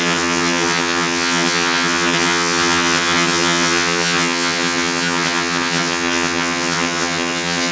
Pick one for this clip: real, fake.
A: fake